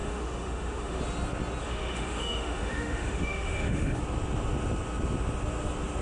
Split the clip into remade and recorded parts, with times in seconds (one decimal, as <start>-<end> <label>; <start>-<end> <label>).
0.0-1.0 remade; 1.0-1.6 recorded; 1.6-4.0 remade; 4.0-6.0 recorded